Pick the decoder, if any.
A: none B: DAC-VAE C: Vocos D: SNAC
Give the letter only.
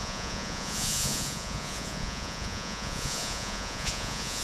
C